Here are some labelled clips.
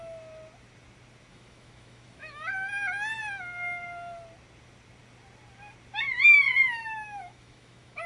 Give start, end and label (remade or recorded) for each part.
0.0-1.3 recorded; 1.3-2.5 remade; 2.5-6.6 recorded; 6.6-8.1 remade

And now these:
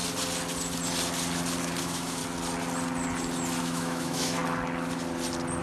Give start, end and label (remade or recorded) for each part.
0.0-1.8 recorded; 1.8-2.2 remade; 2.2-3.6 recorded; 3.6-4.4 remade; 4.4-5.6 recorded